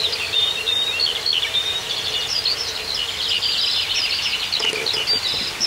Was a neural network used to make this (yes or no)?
no